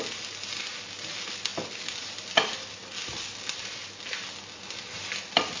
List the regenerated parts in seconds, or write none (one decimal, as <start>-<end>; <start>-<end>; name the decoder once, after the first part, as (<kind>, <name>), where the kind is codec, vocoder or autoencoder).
none